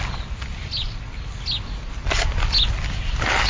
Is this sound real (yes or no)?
yes